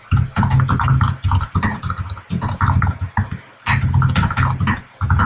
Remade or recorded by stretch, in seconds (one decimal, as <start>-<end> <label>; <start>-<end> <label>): 0.0-5.3 recorded

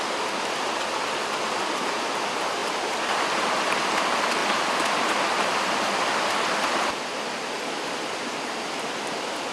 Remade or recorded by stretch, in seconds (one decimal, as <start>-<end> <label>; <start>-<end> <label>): 0.0-9.5 recorded

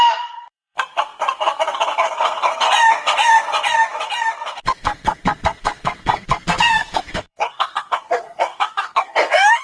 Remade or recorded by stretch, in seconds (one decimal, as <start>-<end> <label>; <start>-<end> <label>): 0.0-9.6 remade